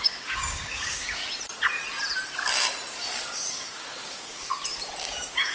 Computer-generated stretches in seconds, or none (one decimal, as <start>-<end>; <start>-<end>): 0.0-1.2; 3.2-4.5; 5.0-5.5